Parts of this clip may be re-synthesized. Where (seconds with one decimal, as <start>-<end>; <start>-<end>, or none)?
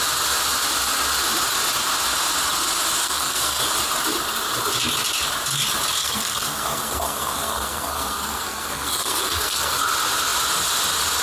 3.0-3.6; 6.0-9.8